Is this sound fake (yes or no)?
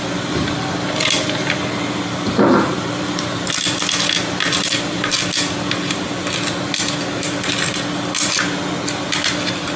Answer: no